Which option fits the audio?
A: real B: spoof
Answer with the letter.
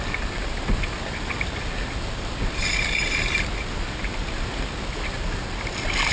A